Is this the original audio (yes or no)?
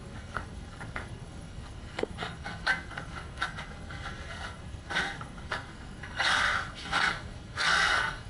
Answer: no